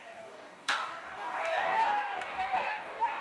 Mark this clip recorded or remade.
remade